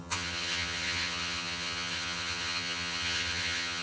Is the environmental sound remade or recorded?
remade